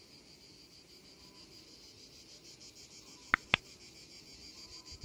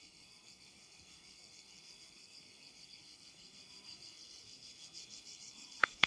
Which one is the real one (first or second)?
first